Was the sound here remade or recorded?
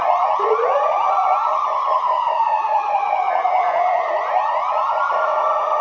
remade